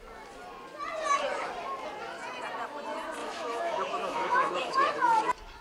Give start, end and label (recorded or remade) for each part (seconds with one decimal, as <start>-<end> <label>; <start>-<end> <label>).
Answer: 0.0-3.2 recorded; 3.2-4.9 remade; 4.9-5.6 recorded